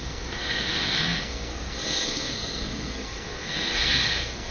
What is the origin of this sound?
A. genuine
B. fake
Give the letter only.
B